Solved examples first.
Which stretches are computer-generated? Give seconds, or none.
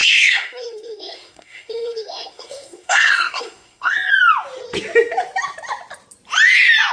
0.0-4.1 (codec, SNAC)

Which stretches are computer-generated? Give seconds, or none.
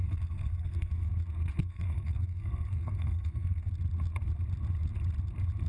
0.0-1.1 (codec, SNAC); 1.6-3.7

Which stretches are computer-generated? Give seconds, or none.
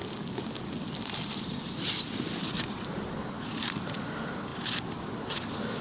none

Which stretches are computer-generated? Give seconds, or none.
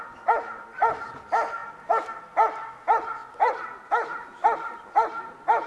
none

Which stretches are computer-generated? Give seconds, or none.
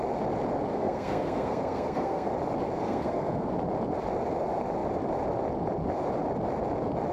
0.7-2.3 (codec, SNAC); 2.8-3.5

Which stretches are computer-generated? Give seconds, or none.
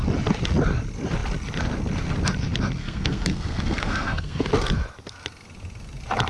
2.8-4.5 (codec, SNAC)